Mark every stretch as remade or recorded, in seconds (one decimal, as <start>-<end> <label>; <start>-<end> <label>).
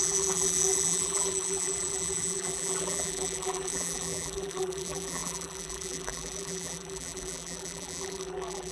0.0-8.7 remade